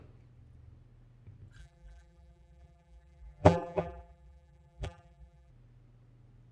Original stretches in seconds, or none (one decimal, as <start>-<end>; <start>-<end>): 0.0-1.6; 5.5-6.5